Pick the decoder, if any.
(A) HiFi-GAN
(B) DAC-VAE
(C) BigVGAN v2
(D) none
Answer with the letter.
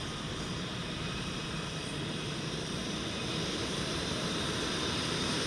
C